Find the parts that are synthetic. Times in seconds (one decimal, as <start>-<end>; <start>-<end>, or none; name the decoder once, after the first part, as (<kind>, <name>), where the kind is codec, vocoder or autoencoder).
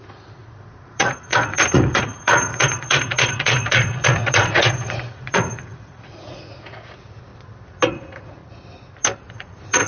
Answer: 0.0-7.3 (vocoder, Vocos); 7.9-8.4; 9.3-9.9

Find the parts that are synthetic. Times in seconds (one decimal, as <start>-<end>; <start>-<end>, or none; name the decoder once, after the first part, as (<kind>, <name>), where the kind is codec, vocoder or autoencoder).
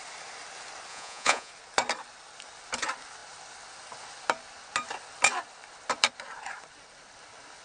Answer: 0.9-1.5 (vocoder, Vocos)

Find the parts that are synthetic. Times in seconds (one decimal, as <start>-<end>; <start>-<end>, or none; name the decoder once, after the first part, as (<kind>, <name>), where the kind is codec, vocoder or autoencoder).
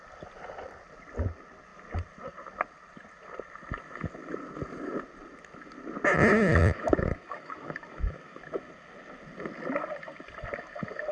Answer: 6.6-8.4 (autoencoder, DAC-VAE)